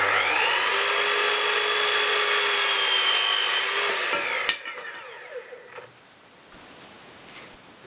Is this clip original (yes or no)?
yes